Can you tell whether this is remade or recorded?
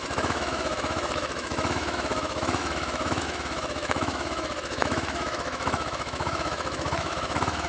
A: remade